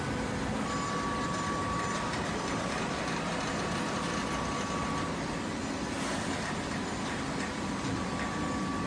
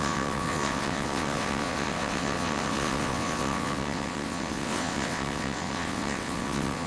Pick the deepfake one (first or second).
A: second